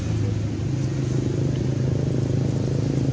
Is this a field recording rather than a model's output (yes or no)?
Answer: yes